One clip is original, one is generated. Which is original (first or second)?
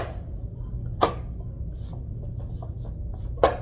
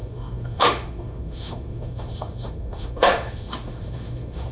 first